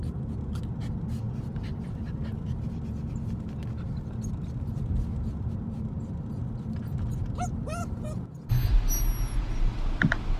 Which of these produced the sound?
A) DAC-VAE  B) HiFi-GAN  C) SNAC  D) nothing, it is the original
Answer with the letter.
D